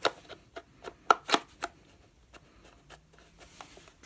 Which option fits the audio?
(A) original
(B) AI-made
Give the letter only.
A